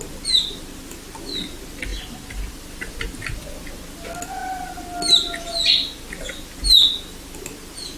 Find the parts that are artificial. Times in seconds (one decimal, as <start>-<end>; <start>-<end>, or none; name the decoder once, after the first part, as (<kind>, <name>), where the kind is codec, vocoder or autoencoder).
none

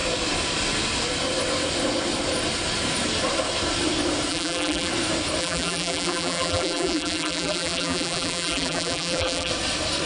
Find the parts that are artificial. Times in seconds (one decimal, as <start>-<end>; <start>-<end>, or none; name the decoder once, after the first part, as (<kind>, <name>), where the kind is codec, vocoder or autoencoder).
4.3-4.9 (vocoder, BigVGAN v2); 5.4-9.5

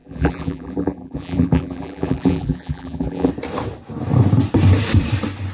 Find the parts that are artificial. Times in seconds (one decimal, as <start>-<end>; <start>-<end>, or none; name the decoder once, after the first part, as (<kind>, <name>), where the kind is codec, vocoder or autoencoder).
0.0-3.3 (vocoder, BigVGAN v2)

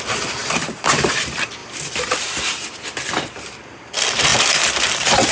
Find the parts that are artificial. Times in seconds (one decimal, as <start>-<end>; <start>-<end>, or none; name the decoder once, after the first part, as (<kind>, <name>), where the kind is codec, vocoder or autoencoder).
0.4-1.1 (vocoder, BigVGAN v2); 4.3-5.3